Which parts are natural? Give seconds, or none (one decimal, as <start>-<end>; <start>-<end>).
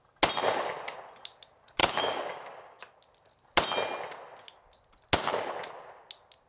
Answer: 0.0-1.8; 2.8-6.5